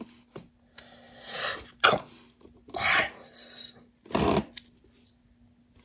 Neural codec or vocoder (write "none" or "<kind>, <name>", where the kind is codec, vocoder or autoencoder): none